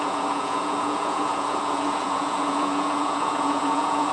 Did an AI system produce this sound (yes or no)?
yes